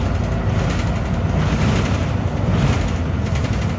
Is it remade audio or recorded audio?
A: recorded